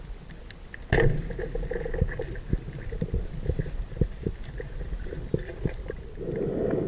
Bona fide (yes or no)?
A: yes